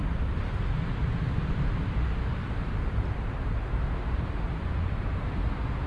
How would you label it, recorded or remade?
recorded